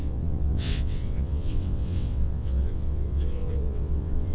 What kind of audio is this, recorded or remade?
remade